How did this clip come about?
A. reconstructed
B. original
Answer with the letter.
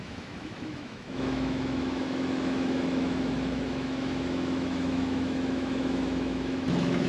A